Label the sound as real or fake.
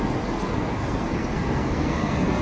fake